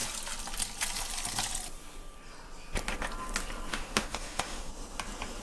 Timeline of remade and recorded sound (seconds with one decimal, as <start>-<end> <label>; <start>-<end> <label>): 0.0-3.7 recorded; 3.7-4.7 remade; 4.7-5.4 recorded